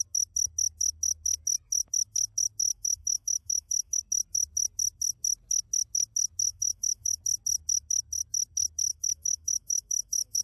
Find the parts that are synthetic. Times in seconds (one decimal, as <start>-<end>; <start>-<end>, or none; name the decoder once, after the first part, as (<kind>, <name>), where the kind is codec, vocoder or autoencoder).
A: 2.7-4.0 (autoencoder, DAC-VAE); 6.5-7.2; 8.9-10.4